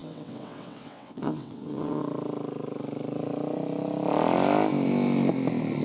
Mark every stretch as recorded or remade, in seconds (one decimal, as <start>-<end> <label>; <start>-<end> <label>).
0.0-2.0 remade; 2.0-5.8 recorded